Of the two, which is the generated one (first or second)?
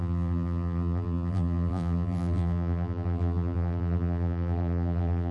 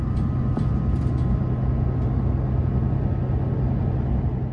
first